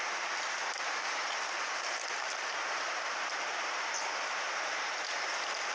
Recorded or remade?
recorded